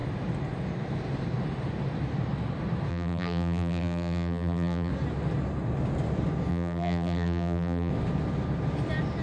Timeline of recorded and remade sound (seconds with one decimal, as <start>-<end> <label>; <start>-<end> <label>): 0.0-2.9 recorded; 2.9-4.9 remade; 4.9-6.5 recorded; 6.5-7.9 remade; 7.9-9.2 recorded